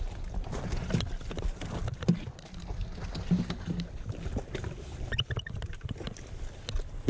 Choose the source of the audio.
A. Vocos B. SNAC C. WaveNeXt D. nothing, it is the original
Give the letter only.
D